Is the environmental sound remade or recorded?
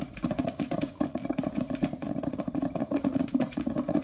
remade